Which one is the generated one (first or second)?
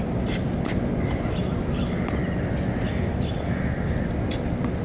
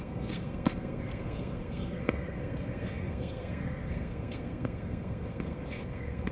second